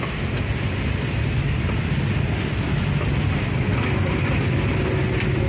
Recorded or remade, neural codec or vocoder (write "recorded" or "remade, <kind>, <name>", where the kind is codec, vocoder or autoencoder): recorded